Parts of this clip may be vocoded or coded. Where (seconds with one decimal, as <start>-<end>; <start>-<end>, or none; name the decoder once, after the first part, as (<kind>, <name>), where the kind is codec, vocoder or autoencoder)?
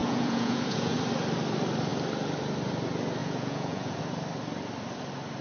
0.0-1.0 (vocoder, Vocos); 3.2-4.0